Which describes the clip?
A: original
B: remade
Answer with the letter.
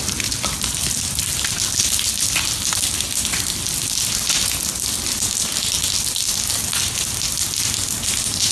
A